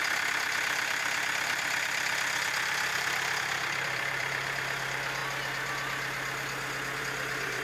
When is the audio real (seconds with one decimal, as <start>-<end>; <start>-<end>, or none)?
5.2-7.0